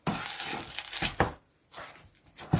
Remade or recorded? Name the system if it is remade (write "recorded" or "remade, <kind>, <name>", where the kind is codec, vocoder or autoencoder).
recorded